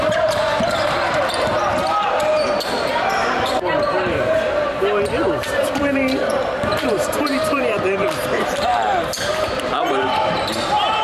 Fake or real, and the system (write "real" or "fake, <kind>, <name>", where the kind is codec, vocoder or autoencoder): fake, vocoder, BigVGAN v2